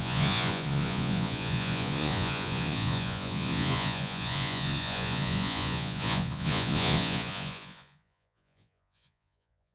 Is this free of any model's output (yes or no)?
no